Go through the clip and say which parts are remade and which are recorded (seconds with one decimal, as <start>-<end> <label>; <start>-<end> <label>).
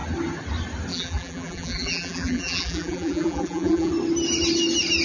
0.0-0.9 recorded; 0.9-3.9 remade; 3.9-5.0 recorded